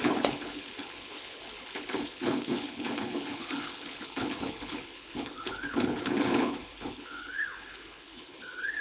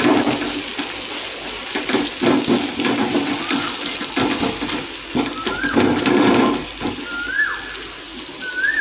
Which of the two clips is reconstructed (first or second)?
first